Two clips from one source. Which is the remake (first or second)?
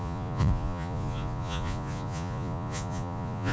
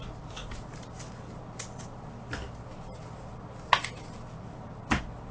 first